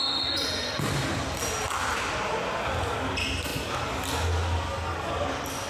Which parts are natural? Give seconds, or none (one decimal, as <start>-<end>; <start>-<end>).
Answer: 0.0-5.7